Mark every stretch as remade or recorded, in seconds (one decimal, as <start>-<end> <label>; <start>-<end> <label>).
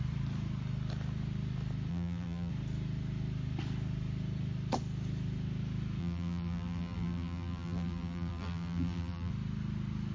0.0-1.9 recorded; 1.9-2.5 remade; 2.5-6.0 recorded; 6.0-9.3 remade; 9.3-10.1 recorded